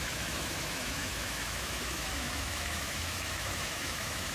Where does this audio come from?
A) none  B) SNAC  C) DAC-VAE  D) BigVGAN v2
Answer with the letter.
C